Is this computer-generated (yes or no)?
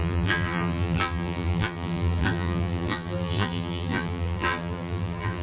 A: yes